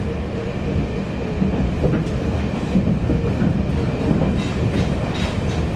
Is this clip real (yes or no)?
yes